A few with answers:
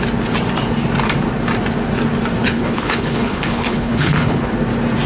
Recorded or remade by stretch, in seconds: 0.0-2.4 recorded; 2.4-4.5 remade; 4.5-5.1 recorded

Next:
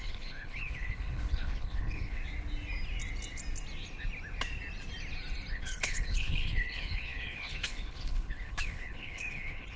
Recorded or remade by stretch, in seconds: 0.0-2.2 remade; 2.2-5.5 recorded; 5.5-9.8 remade